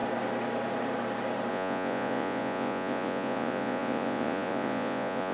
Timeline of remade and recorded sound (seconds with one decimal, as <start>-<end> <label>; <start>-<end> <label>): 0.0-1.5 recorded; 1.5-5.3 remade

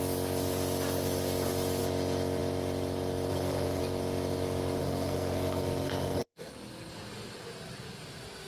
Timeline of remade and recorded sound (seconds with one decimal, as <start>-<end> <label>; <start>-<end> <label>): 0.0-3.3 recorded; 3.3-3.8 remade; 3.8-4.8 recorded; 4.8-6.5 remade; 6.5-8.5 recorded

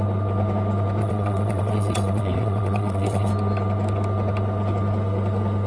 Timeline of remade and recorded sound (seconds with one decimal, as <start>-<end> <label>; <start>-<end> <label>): 0.0-1.0 recorded; 1.0-3.3 remade; 3.3-5.7 recorded